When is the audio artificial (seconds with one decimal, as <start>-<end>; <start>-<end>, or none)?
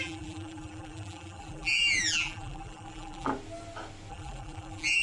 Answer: 0.0-3.3; 4.1-5.0